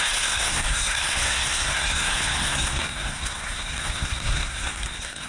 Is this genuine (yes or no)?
no